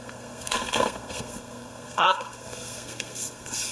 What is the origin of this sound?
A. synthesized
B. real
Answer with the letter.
A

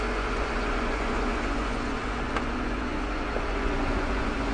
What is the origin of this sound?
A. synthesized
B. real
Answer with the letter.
A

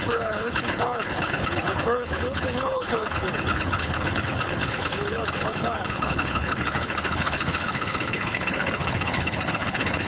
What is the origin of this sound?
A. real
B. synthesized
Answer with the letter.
B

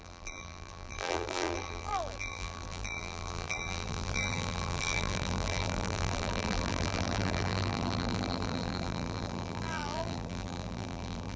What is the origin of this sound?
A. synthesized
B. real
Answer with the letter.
A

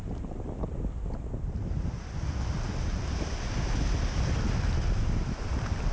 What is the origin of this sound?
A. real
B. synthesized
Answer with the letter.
A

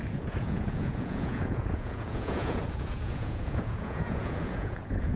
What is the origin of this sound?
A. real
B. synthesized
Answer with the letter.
B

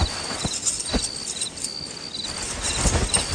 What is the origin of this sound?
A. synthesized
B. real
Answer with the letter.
B